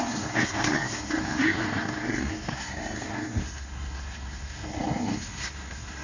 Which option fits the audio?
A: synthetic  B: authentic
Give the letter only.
A